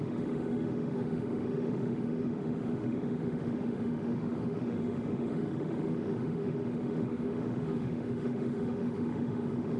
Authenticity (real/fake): fake